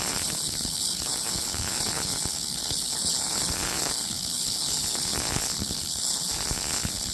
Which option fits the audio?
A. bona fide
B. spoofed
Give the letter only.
B